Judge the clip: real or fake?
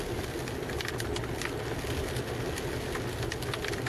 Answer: real